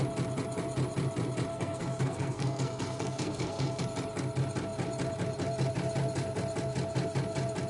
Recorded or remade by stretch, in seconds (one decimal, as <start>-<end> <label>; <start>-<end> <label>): 0.0-1.5 recorded; 1.5-3.8 remade; 3.8-7.7 recorded